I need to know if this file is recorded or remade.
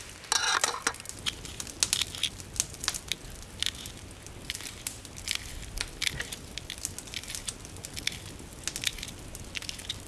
recorded